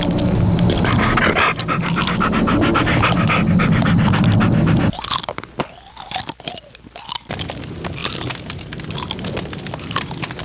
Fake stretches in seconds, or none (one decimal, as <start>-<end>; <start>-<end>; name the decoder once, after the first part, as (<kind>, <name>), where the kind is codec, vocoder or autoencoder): none